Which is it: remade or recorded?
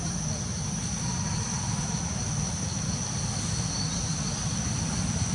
recorded